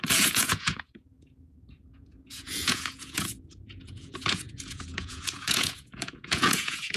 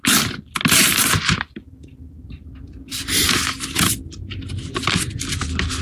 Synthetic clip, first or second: first